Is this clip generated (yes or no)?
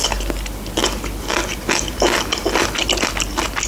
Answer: no